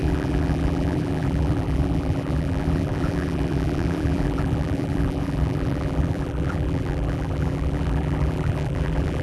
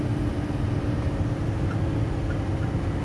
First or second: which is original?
second